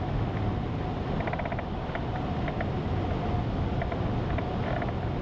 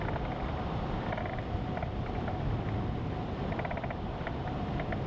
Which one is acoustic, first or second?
first